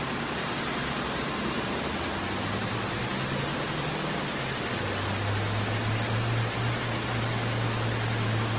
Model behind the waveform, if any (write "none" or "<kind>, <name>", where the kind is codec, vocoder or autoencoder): none